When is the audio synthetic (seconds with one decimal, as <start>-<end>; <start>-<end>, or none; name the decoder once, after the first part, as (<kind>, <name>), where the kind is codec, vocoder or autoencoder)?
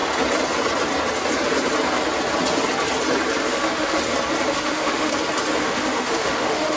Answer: 3.4-4.0 (autoencoder, DAC-VAE); 4.5-5.1; 5.6-6.8